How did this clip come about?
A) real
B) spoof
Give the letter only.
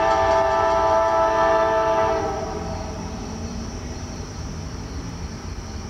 B